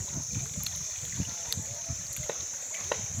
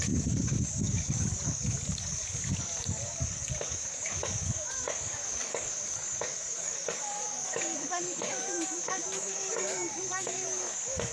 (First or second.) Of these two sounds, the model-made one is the second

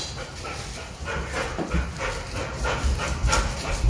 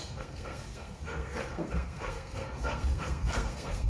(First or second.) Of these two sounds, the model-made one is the second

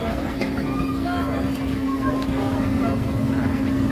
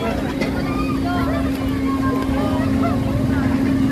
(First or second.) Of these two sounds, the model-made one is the first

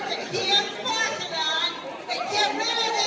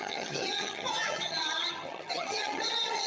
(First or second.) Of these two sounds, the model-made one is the second